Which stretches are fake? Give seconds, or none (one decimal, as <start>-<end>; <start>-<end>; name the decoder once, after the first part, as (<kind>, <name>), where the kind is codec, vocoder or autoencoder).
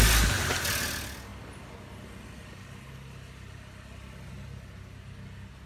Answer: none